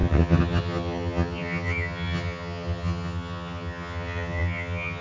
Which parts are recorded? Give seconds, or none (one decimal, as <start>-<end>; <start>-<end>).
none